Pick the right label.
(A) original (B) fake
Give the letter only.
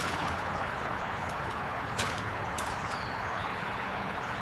B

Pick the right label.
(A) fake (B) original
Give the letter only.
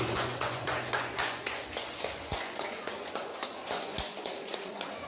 A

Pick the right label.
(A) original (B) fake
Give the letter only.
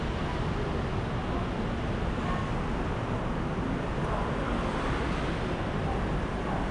A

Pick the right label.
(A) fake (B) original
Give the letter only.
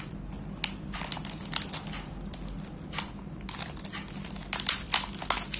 B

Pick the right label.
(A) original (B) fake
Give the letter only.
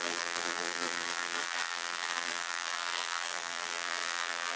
B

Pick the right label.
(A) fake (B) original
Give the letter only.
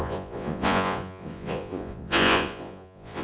A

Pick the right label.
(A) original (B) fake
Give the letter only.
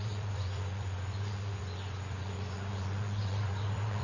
B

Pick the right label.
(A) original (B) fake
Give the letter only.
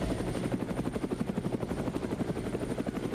B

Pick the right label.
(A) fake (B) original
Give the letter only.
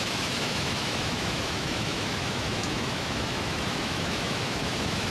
A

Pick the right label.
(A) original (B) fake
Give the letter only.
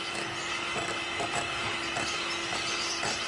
A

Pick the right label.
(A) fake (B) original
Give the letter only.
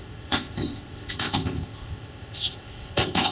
A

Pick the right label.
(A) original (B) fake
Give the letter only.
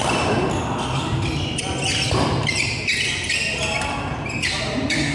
A